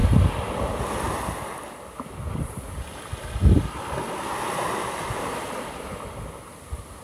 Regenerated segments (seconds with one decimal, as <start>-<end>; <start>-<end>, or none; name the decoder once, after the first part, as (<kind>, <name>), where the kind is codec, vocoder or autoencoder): none